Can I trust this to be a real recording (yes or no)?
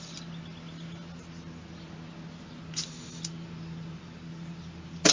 yes